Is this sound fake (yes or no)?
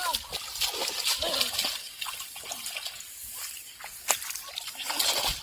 no